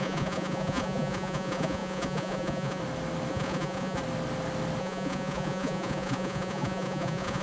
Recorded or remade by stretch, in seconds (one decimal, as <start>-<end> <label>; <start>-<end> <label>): 0.0-2.8 remade; 2.8-3.3 recorded; 3.3-4.0 remade; 4.0-4.8 recorded; 4.8-7.4 remade